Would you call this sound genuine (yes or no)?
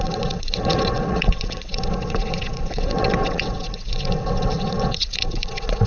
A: no